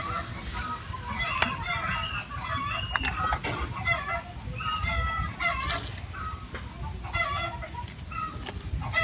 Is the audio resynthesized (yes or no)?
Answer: no